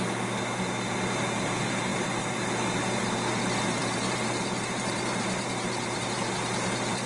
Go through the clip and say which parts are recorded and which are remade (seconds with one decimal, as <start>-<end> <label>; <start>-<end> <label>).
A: 0.0-3.8 recorded; 3.8-7.1 remade